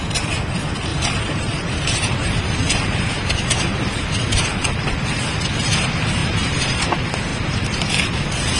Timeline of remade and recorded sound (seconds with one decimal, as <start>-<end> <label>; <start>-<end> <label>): 0.0-0.9 recorded; 0.9-4.0 remade; 4.0-6.2 recorded; 6.2-6.8 remade; 6.8-7.3 recorded; 7.3-7.9 remade; 7.9-8.6 recorded